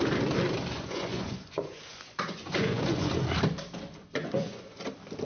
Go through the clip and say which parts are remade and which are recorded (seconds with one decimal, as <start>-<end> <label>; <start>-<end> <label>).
0.0-0.7 recorded; 0.7-3.1 remade; 3.1-4.0 recorded; 4.0-4.8 remade; 4.8-5.2 recorded